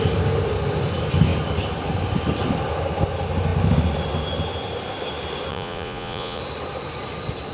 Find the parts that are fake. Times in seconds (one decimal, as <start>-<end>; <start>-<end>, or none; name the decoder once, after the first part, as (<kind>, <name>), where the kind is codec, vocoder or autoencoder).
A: 5.5-6.4 (vocoder, Vocos)